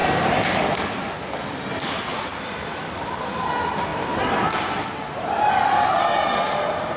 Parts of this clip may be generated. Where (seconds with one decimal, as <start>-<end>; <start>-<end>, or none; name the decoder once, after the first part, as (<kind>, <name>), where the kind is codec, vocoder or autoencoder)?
0.0-0.6 (vocoder, BigVGAN v2); 2.1-3.5; 3.9-5.3